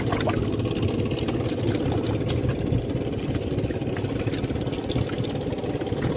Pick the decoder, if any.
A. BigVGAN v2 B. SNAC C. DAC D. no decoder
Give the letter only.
D